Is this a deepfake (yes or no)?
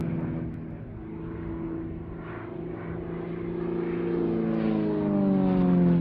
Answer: no